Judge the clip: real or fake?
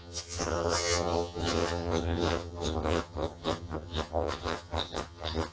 fake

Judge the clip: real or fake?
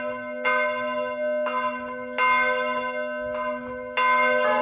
real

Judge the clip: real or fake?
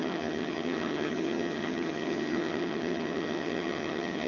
fake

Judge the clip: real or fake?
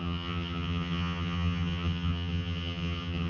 fake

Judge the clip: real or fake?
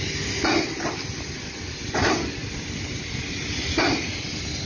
real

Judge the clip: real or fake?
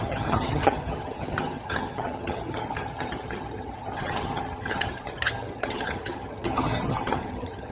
fake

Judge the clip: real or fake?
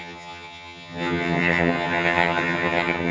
fake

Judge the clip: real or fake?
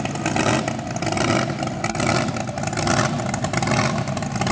real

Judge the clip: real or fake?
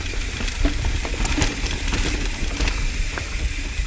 real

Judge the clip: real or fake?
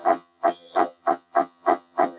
fake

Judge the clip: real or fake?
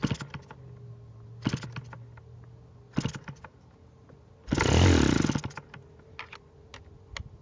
real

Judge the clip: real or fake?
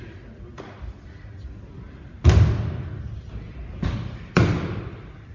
real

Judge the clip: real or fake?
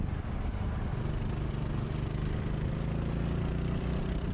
real